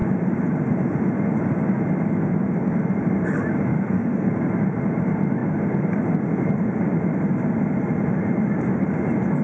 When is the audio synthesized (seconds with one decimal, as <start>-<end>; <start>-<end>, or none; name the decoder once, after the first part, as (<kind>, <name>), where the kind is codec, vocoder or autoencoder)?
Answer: 3.7-4.3 (codec, SNAC)